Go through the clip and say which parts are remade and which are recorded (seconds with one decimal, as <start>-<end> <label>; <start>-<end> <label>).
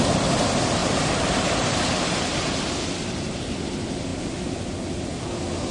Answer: 0.0-0.8 recorded; 0.8-1.8 remade; 1.8-5.7 recorded